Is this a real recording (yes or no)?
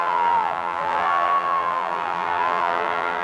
no